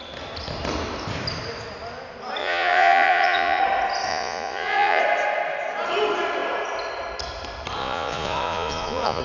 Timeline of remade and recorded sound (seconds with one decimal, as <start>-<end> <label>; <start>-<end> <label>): 0.0-2.4 recorded; 2.4-3.6 remade; 3.6-4.1 recorded; 4.1-5.0 remade; 5.0-7.8 recorded; 7.8-9.2 remade